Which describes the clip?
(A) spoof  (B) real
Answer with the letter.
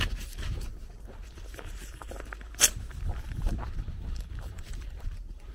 A